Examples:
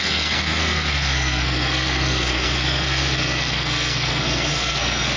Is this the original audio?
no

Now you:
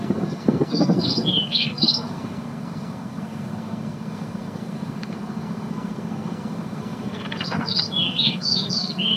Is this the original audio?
no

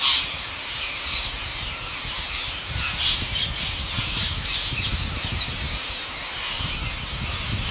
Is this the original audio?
yes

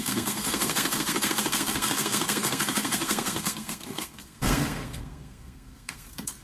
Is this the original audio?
no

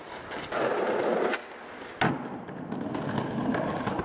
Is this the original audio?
yes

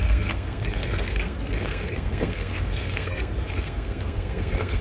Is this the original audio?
no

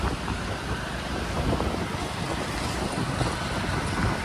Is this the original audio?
yes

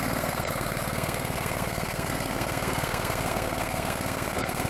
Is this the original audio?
no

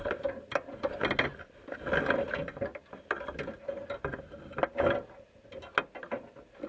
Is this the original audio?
yes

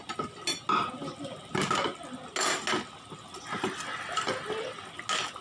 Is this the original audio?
yes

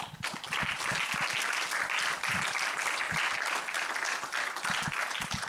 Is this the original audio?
yes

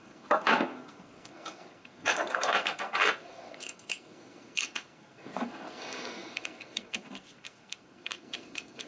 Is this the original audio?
no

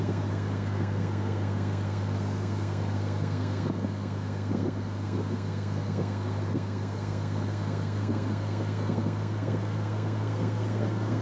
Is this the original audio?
no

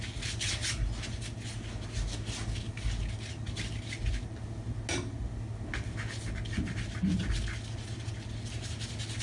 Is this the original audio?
yes